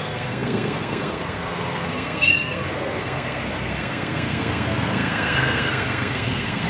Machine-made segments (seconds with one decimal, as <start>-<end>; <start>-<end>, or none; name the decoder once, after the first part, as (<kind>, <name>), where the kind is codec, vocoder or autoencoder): 0.0-6.7 (codec, SNAC)